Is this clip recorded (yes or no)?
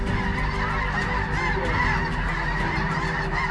no